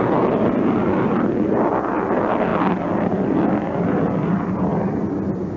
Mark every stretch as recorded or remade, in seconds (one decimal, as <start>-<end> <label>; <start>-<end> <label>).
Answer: 0.0-5.6 recorded